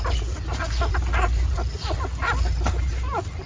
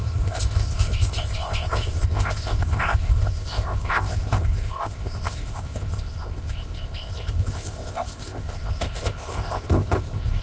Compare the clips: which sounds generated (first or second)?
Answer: second